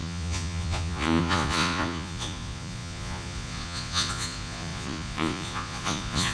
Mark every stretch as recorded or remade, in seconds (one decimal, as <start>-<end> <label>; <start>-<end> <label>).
0.0-6.3 remade